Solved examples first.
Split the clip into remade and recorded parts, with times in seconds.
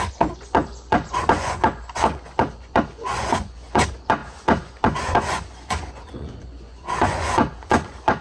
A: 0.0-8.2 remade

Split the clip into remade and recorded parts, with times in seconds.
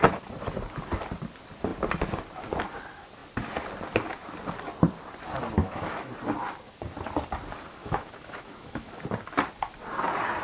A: 0.0-5.6 recorded; 5.6-6.1 remade; 6.1-7.8 recorded; 7.8-8.9 remade; 8.9-10.4 recorded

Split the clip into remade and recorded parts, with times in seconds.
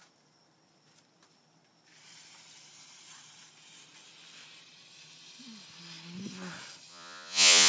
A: 0.0-6.9 recorded; 6.9-7.7 remade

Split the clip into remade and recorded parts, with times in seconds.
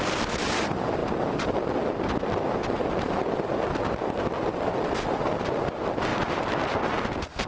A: 0.0-7.5 recorded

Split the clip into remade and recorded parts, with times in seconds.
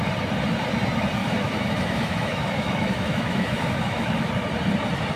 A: 0.0-1.2 recorded; 1.2-4.3 remade; 4.3-5.2 recorded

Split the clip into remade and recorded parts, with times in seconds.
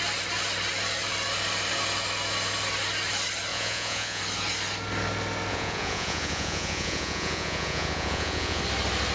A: 0.0-3.5 recorded; 3.5-4.2 remade; 4.2-5.5 recorded; 5.5-8.6 remade; 8.6-9.1 recorded